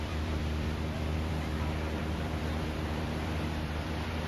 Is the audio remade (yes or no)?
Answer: yes